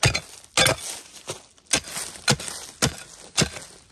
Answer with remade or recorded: recorded